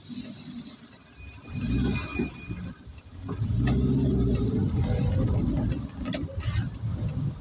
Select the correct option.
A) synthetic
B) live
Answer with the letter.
B